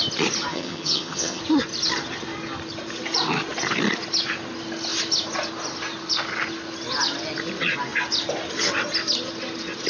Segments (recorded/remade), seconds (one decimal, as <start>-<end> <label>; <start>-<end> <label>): 0.0-0.5 recorded; 0.5-1.4 remade; 1.4-9.9 recorded